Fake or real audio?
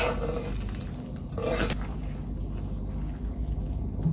real